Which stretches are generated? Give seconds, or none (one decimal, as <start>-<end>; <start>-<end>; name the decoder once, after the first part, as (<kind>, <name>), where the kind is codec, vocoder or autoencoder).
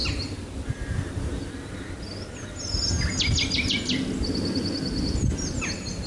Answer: none